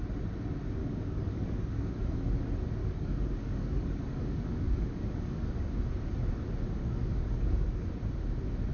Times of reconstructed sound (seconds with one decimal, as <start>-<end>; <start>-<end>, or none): 0.8-2.2; 2.8-5.7; 6.8-7.9